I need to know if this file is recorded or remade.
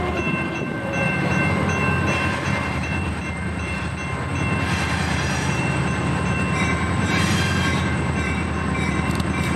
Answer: remade